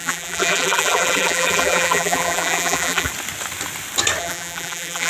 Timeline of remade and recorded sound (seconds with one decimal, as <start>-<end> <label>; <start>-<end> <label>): 0.0-3.1 remade; 3.1-4.2 recorded; 4.2-5.1 remade